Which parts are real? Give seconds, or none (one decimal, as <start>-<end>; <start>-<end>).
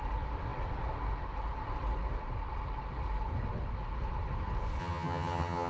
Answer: 0.0-4.8